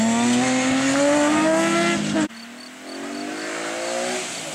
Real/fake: real